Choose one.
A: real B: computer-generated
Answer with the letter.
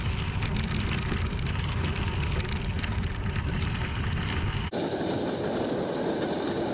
A